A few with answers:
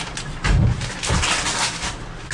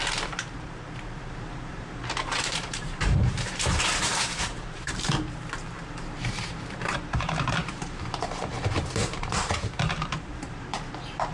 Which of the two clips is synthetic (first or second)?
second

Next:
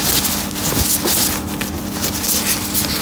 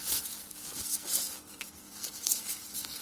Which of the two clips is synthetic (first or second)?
second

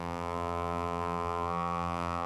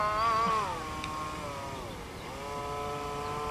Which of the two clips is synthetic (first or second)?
first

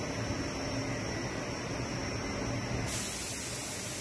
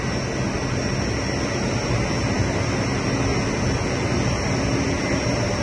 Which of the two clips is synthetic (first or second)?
first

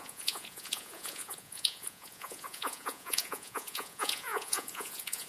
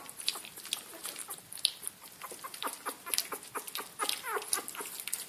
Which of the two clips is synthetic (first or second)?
first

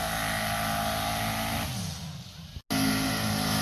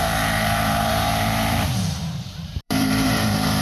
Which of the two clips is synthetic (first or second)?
second